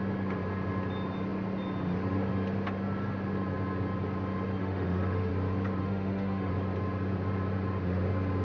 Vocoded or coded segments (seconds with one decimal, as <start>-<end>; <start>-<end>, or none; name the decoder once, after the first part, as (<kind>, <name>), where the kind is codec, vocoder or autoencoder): 4.6-5.3 (autoencoder, DAC-VAE); 5.8-6.5